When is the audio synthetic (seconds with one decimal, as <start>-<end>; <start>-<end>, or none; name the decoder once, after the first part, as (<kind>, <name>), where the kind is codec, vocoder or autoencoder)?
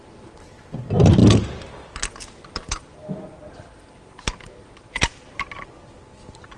none